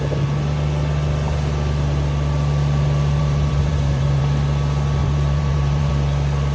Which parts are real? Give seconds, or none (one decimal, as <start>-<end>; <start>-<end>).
0.0-3.2; 4.2-5.0; 5.9-6.5